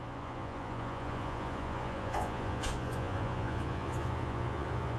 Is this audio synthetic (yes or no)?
yes